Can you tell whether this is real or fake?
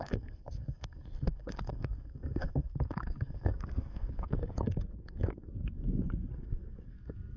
fake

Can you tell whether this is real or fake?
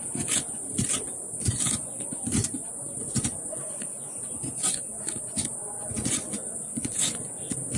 fake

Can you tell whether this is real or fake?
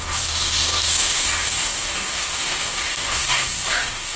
fake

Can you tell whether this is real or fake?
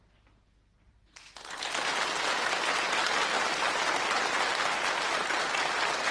real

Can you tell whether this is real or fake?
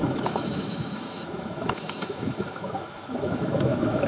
fake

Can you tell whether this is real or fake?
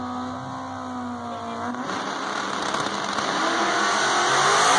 real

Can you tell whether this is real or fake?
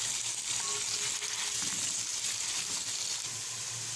real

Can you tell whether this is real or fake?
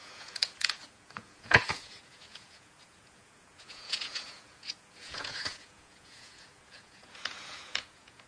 fake